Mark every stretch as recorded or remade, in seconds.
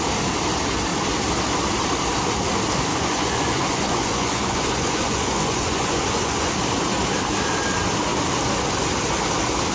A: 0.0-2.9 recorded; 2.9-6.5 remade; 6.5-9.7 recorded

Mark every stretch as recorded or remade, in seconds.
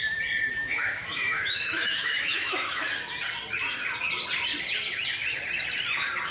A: 0.0-0.6 recorded; 0.6-2.9 remade; 2.9-6.3 recorded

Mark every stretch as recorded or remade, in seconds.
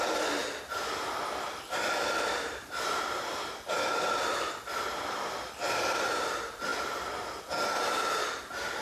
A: 0.0-8.8 recorded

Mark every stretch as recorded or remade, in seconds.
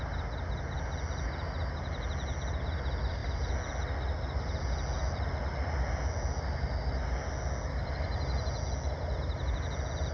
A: 0.0-10.1 recorded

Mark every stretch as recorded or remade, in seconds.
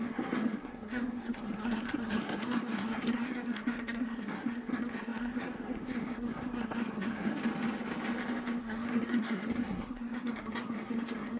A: 0.0-7.4 remade; 7.4-8.6 recorded; 8.6-11.4 remade